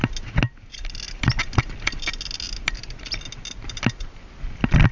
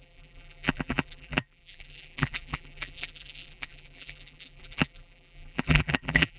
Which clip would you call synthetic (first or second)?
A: second